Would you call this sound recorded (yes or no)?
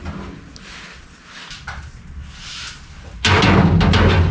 yes